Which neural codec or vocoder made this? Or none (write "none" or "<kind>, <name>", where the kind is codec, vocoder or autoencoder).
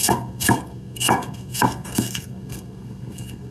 codec, SNAC